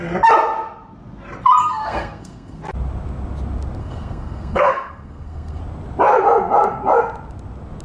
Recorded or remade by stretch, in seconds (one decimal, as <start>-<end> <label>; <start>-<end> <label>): 0.0-1.6 recorded; 1.6-2.6 remade; 2.6-3.8 recorded; 3.8-5.6 remade; 5.6-7.8 recorded